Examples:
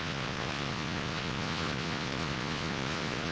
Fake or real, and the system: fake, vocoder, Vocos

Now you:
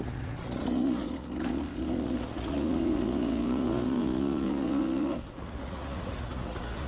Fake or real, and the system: fake, vocoder, Vocos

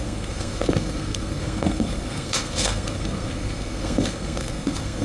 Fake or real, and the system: fake, codec, SNAC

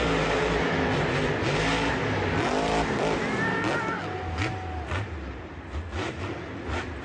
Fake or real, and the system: real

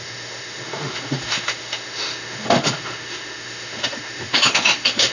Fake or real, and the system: fake, autoencoder, DAC-VAE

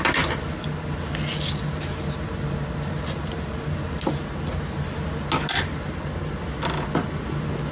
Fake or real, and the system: real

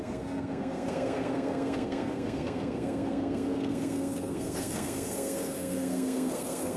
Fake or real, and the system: fake, codec, SNAC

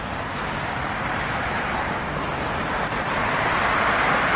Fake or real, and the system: fake, vocoder, BigVGAN v2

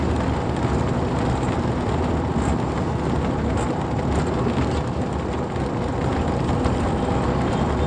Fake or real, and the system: real